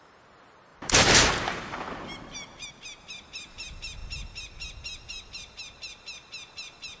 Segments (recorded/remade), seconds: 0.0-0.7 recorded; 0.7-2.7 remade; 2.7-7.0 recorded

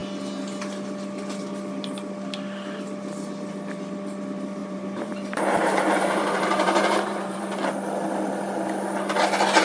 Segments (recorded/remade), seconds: 0.0-4.6 recorded; 4.6-7.5 remade; 7.5-9.6 recorded